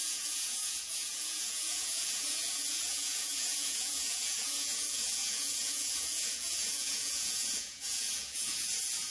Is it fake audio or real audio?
fake